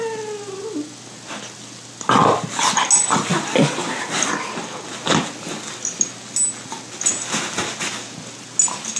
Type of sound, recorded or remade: recorded